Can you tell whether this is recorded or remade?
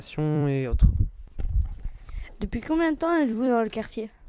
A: remade